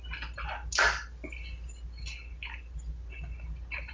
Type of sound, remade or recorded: recorded